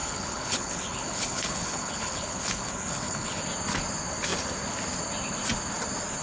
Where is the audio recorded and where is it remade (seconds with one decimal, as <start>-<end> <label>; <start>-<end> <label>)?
0.0-3.4 remade; 3.4-6.2 recorded